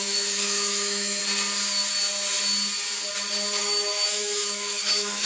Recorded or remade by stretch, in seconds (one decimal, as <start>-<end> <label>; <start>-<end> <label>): 0.0-1.2 remade; 1.2-3.6 recorded; 3.6-5.3 remade